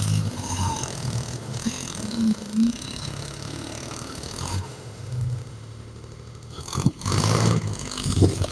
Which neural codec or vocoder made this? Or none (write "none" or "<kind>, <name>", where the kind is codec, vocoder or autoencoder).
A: autoencoder, DAC-VAE